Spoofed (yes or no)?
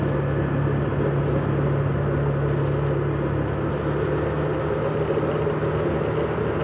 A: no